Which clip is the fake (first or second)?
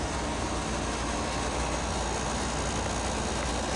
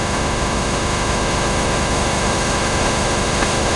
second